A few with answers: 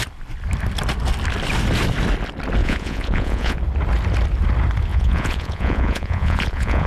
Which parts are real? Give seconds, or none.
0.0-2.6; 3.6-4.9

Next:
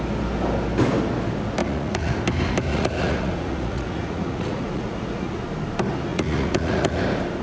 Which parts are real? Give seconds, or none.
0.0-1.6; 2.2-2.7; 5.4-6.1; 7.0-7.4

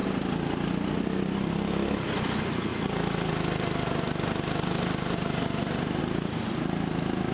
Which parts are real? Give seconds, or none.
0.0-7.3

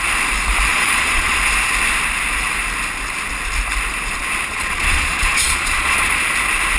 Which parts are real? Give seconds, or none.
0.0-0.7; 1.4-4.5; 6.2-6.8

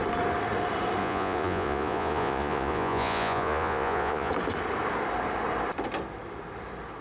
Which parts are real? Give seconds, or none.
0.0-1.0; 4.3-7.0